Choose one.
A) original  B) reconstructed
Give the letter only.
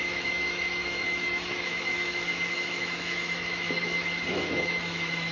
B